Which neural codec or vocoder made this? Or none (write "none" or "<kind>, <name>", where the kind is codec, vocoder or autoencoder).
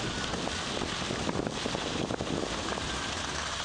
none